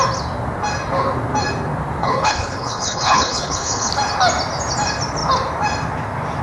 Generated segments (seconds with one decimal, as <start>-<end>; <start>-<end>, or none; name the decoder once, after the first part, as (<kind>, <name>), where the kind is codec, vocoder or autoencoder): 2.0-3.9 (codec, HILCodec)